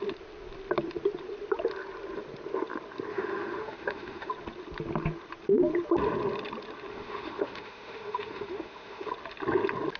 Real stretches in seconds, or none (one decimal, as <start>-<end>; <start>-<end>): 0.0-3.1; 4.3-6.9; 9.1-10.0